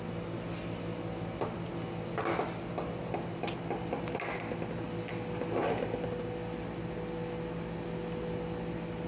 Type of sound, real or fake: real